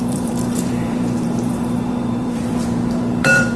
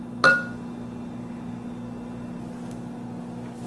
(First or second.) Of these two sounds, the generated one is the first